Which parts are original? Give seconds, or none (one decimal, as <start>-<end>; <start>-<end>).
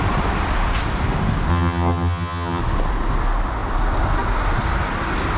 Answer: 0.0-1.5; 2.6-5.4